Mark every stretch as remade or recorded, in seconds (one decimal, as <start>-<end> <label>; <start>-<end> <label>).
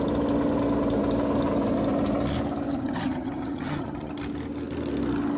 0.0-2.7 recorded; 2.7-4.1 remade; 4.1-5.4 recorded